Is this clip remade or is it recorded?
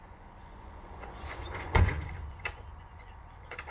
remade